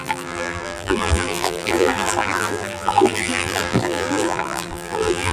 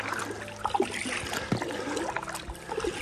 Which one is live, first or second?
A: second